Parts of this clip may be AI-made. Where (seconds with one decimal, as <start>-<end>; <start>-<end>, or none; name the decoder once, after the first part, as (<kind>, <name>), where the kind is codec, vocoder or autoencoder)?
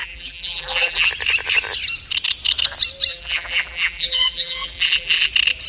0.0-1.1 (vocoder, BigVGAN v2); 3.1-5.3